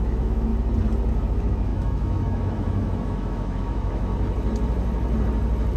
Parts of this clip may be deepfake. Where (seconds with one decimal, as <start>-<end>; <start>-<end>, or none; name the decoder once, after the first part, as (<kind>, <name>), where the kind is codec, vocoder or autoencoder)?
0.0-0.5 (autoencoder, DAC-VAE); 1.1-4.1